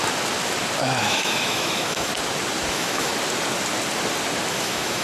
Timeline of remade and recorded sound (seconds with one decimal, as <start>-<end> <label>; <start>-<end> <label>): 0.0-1.0 recorded; 1.0-2.1 remade; 2.1-2.7 recorded; 2.7-3.1 remade; 3.1-4.5 recorded; 4.5-5.0 remade